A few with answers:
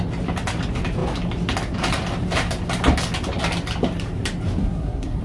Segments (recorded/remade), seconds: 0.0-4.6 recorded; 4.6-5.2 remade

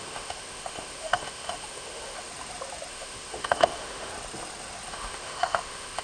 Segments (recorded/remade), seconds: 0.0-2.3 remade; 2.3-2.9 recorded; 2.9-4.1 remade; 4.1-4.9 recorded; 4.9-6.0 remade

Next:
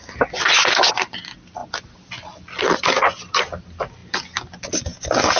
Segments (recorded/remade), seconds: 0.0-5.4 recorded

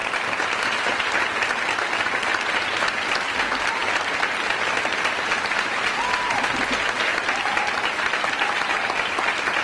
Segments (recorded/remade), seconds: 0.0-9.6 recorded

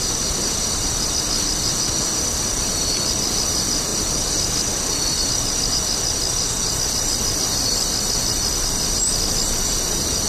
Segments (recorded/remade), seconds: 0.0-10.3 recorded

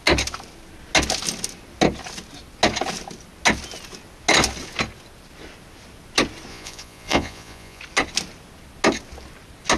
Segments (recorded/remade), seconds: 0.0-6.5 recorded; 6.5-7.8 remade; 7.8-9.8 recorded